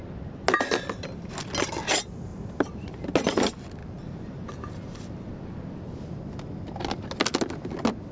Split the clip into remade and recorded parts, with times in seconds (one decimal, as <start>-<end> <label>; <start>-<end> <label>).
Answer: 0.0-2.3 recorded; 2.3-3.1 remade; 3.1-3.8 recorded; 3.8-5.8 remade; 5.8-8.1 recorded